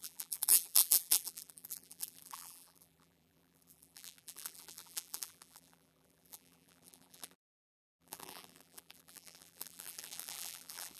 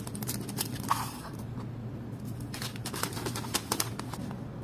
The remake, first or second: first